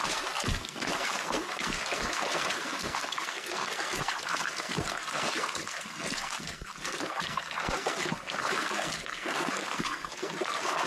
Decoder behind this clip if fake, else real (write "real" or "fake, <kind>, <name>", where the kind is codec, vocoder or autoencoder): fake, codec, SNAC